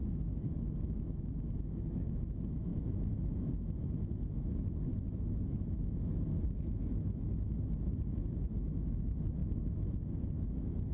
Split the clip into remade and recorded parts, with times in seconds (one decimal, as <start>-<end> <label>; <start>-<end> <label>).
0.0-10.9 remade